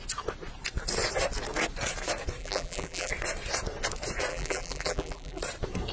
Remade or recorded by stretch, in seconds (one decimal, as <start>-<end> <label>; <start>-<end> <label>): 0.0-2.4 recorded; 2.4-3.1 remade; 3.1-4.3 recorded; 4.3-5.4 remade; 5.4-5.9 recorded